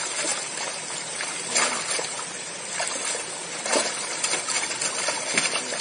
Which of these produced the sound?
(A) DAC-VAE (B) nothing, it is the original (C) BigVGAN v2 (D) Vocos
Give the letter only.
B